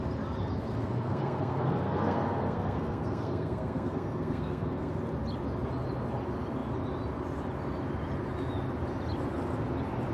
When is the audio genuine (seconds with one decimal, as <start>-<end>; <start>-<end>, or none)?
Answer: 0.0-0.4; 4.9-10.1